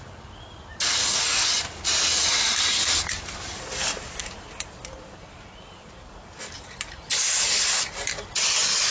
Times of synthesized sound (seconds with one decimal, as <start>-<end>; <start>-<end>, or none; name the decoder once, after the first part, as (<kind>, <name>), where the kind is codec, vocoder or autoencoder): 2.2-6.2 (vocoder, BigVGAN v2)